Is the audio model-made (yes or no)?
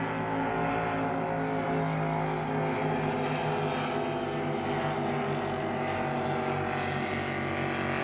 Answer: no